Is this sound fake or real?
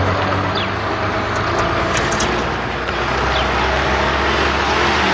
real